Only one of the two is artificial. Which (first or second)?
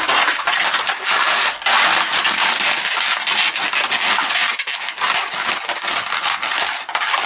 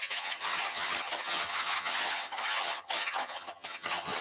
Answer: second